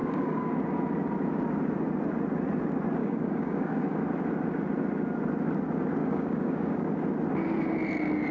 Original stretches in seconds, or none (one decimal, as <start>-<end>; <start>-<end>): 0.5-3.0; 4.0-6.0; 6.9-8.3